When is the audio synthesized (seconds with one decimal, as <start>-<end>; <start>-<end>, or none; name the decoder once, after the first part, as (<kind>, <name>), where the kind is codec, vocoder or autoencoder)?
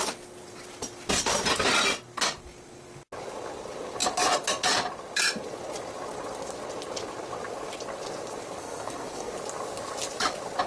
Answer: 8.6-9.3 (codec, SNAC)